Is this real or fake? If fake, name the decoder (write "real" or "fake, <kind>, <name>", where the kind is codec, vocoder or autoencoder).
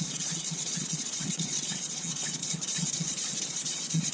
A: fake, vocoder, Vocos